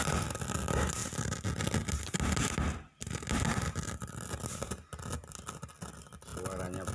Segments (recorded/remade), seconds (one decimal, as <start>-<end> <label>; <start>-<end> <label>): 0.0-6.9 recorded

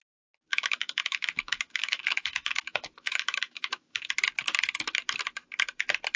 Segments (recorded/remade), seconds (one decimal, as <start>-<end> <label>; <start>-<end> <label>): 0.0-0.5 recorded; 0.5-4.1 remade; 4.1-6.2 recorded

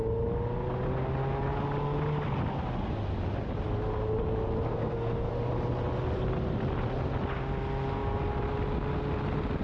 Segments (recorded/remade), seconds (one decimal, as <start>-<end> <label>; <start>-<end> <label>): 0.0-4.7 recorded; 4.7-5.3 remade; 5.3-9.6 recorded

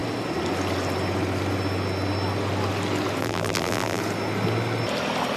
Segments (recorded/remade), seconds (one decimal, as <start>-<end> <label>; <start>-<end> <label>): 0.0-3.2 recorded; 3.2-4.0 remade; 4.0-5.4 recorded

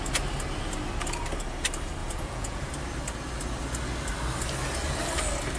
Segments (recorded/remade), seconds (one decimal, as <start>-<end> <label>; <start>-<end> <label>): 0.0-2.0 recorded; 2.0-2.7 remade; 2.7-5.6 recorded

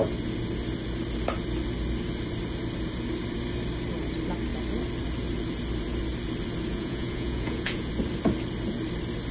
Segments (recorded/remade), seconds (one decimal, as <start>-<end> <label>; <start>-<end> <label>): 0.0-6.7 recorded; 6.7-7.9 remade; 7.9-9.3 recorded

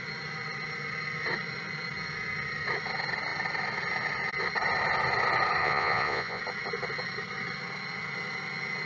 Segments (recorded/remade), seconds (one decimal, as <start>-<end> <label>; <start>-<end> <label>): 0.0-5.6 recorded; 5.6-6.4 remade; 6.4-8.9 recorded

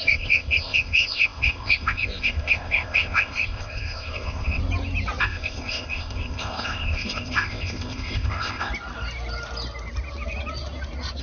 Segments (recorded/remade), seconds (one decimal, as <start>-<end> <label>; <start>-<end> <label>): 0.0-4.6 remade; 4.6-5.2 recorded; 5.2-8.7 remade; 8.7-11.2 recorded